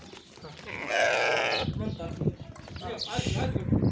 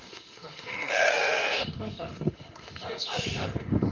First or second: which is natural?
first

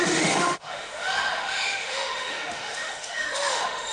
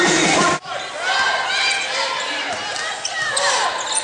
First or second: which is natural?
second